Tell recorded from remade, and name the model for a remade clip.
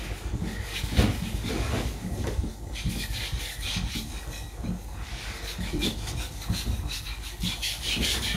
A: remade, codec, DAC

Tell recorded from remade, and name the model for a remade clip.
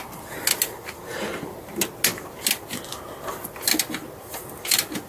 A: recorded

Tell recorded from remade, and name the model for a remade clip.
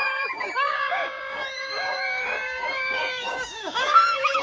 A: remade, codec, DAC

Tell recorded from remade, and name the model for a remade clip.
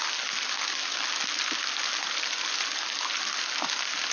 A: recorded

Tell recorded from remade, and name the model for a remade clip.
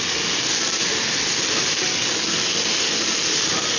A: recorded